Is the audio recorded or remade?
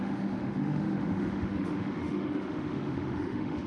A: remade